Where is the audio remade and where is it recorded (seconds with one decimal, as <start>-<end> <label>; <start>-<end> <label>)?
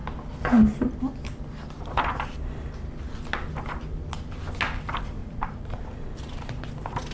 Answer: 0.0-5.2 recorded; 5.2-6.5 remade; 6.5-7.1 recorded